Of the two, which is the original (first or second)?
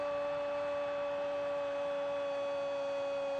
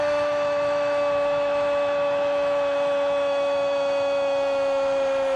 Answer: first